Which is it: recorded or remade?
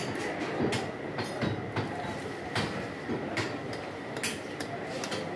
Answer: recorded